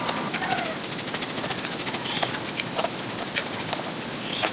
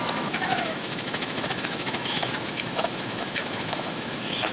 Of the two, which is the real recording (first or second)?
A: first